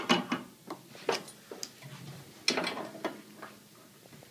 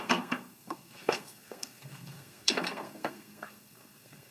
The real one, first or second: first